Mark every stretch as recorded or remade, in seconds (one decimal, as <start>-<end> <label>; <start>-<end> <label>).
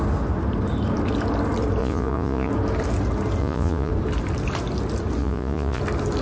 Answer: 0.0-1.8 recorded; 1.8-2.5 remade; 2.5-3.4 recorded; 3.4-3.9 remade; 3.9-5.2 recorded; 5.2-5.8 remade; 5.8-6.2 recorded